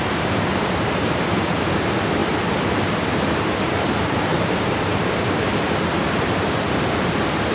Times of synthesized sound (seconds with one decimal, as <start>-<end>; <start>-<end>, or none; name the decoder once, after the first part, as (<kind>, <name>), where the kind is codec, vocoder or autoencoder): 0.0-7.5 (vocoder, BigVGAN v2)